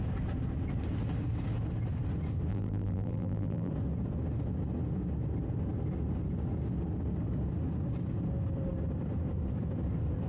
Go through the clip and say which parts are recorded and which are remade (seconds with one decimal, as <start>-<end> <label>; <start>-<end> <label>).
0.0-2.5 recorded; 2.5-3.7 remade; 3.7-10.3 recorded